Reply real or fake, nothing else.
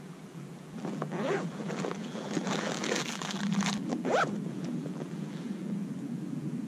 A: fake